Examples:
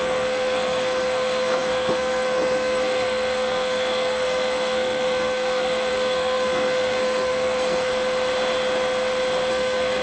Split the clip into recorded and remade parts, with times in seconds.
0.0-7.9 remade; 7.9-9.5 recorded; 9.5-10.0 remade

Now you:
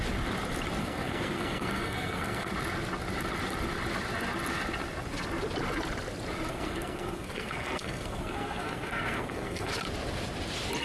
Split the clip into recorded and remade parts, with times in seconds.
0.0-0.8 recorded; 0.8-2.5 remade; 2.5-6.5 recorded; 6.5-9.7 remade; 9.7-10.8 recorded

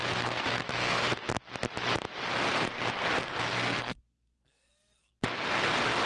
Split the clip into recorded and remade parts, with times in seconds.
0.0-1.2 remade; 1.2-3.2 recorded; 3.2-5.1 remade; 5.1-6.1 recorded

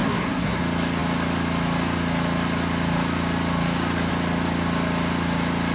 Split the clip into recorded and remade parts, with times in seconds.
0.0-0.6 remade; 0.6-5.7 recorded

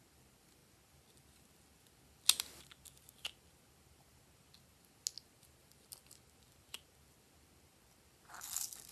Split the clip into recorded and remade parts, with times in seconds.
0.0-8.9 recorded

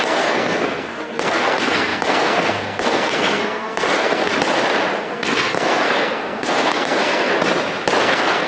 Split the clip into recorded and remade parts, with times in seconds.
0.0-4.3 remade; 4.3-5.0 recorded; 5.0-7.3 remade; 7.3-8.0 recorded; 8.0-8.5 remade

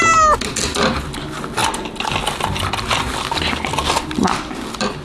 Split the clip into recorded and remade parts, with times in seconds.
0.0-5.0 recorded